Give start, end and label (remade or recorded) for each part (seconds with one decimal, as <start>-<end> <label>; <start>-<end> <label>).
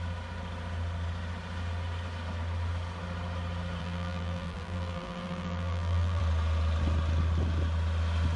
0.0-3.8 recorded; 3.8-6.2 remade; 6.2-8.4 recorded